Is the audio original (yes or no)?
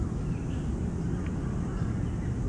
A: yes